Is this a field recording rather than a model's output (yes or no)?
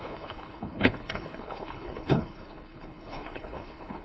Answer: no